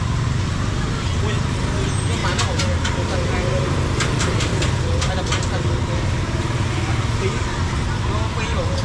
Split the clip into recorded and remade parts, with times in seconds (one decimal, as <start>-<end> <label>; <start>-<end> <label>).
0.0-8.8 recorded